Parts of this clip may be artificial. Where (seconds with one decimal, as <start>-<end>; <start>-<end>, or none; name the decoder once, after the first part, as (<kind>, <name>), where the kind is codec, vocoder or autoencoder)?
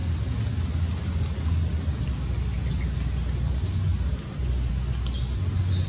none